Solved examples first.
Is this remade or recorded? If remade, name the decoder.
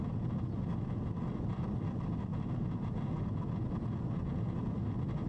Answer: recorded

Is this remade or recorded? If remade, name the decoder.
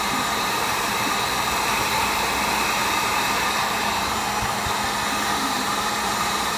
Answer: remade, vocoder, BigVGAN v2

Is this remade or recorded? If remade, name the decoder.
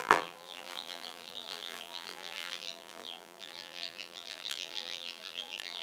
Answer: remade, vocoder, BigVGAN v2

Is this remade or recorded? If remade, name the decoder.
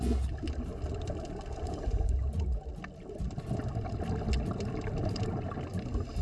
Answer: recorded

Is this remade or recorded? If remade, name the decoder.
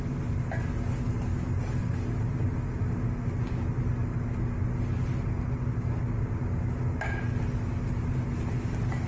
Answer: recorded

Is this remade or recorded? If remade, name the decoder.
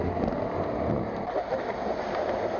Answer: recorded